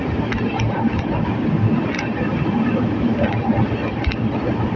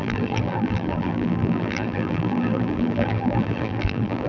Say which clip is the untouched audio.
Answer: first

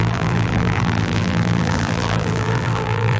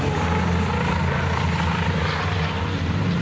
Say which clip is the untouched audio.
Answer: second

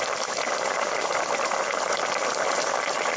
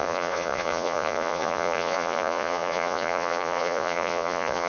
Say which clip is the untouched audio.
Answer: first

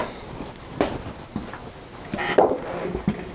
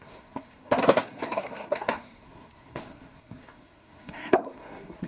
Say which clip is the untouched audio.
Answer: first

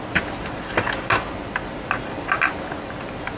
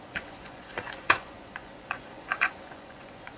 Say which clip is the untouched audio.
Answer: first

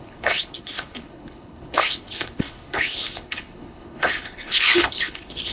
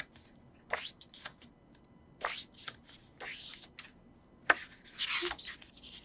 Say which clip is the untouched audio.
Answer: second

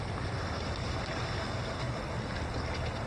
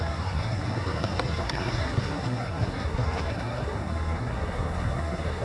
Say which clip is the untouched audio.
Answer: first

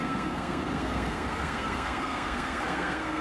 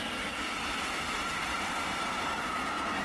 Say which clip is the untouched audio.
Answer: second